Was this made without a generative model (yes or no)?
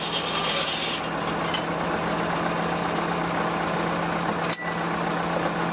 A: yes